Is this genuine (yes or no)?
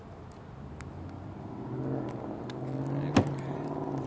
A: yes